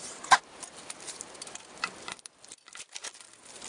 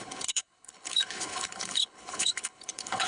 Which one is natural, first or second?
first